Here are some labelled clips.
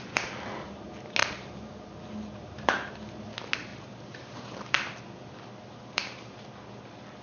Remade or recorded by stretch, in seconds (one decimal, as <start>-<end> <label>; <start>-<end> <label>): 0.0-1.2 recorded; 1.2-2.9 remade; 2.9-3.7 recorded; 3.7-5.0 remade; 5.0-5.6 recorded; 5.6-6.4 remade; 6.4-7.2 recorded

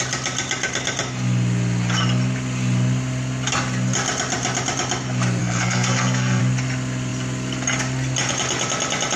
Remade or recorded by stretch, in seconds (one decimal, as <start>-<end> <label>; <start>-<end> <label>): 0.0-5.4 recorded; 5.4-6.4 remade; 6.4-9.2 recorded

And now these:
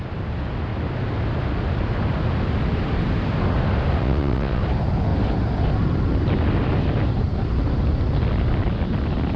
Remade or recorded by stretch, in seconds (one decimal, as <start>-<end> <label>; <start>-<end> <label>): 0.0-4.0 recorded; 4.0-4.6 remade; 4.6-9.4 recorded